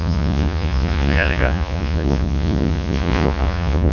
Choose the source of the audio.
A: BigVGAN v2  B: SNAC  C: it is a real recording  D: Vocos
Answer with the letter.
D